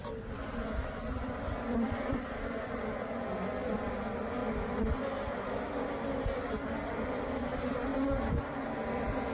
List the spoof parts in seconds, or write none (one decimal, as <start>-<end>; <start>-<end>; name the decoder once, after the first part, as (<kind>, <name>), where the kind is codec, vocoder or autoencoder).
none